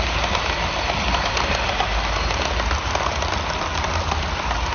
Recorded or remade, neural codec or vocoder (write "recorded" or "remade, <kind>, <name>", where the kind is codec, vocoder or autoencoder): recorded